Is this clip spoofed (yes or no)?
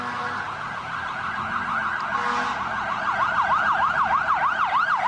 no